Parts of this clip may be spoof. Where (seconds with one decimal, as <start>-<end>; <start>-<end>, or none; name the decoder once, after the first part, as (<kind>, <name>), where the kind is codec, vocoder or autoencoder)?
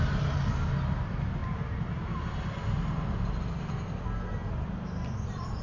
none